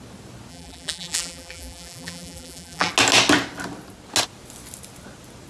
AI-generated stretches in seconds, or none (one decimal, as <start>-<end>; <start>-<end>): 0.5-2.9